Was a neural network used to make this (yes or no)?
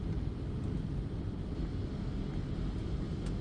no